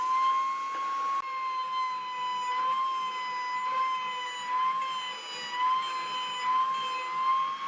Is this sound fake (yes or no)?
no